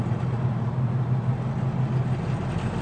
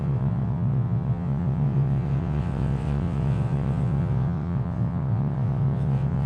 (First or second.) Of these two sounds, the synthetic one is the second